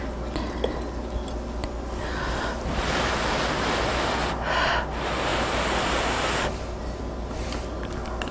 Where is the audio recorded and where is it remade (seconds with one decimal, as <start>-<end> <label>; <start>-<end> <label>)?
0.0-8.3 recorded